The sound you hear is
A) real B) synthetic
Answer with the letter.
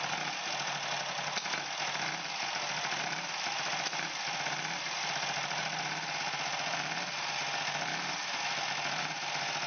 A